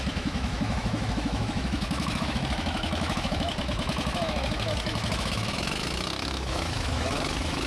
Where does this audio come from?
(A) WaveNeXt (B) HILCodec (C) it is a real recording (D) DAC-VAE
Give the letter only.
D